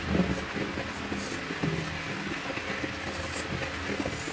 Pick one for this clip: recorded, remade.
recorded